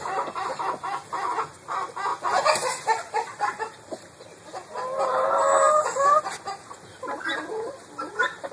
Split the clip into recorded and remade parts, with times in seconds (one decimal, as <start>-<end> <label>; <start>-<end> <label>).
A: 0.0-8.5 recorded